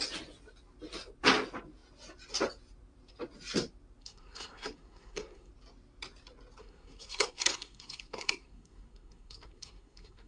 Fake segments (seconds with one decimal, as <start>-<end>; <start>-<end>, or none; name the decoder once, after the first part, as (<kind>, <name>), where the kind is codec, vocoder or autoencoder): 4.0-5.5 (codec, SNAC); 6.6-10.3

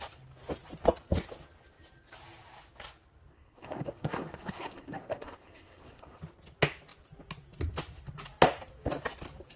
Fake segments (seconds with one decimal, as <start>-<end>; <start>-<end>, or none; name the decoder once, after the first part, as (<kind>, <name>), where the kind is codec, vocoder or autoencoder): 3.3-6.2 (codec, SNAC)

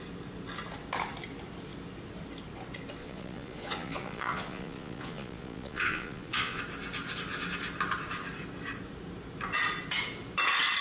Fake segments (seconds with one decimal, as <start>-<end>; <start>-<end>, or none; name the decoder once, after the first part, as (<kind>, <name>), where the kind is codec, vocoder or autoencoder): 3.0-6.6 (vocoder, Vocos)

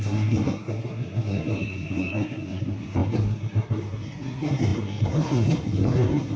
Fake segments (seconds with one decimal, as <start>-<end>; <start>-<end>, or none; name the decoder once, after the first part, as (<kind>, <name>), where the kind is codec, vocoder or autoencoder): 0.0-6.4 (codec, SNAC)